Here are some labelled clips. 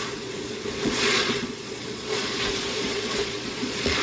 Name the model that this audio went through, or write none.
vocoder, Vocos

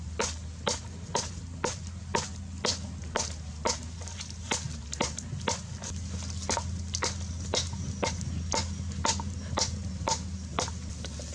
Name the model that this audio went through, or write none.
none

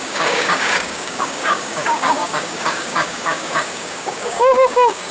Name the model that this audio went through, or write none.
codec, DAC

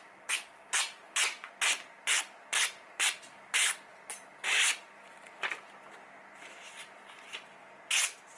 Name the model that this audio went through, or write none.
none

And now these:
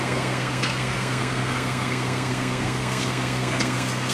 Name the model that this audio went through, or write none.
codec, SNAC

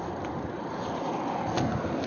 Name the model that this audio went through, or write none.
none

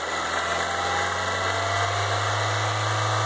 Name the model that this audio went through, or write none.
none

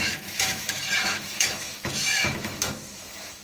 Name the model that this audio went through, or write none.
autoencoder, DAC-VAE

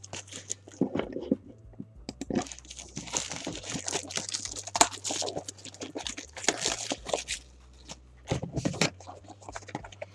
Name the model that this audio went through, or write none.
none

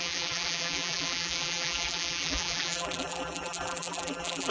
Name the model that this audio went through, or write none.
vocoder, BigVGAN v2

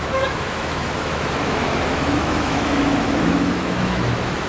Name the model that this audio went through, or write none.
autoencoder, DAC-VAE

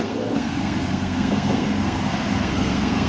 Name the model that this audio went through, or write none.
codec, SNAC